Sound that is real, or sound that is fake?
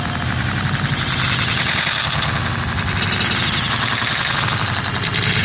real